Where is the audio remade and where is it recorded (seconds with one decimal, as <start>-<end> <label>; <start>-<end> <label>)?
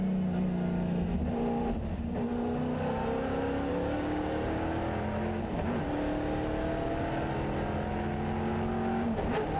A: 0.0-3.7 recorded; 3.7-4.7 remade; 4.7-9.6 recorded